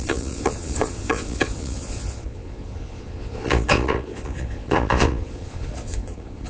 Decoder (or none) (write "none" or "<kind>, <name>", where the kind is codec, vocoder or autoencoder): vocoder, Vocos